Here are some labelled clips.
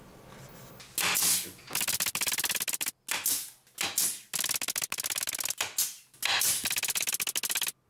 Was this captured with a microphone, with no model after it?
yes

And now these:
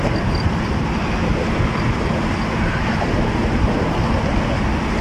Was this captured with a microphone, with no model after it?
yes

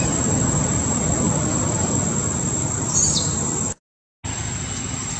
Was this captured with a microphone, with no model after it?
yes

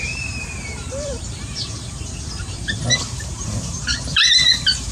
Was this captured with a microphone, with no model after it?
no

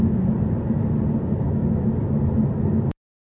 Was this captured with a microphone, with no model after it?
yes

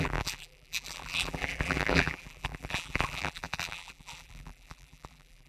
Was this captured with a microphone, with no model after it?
no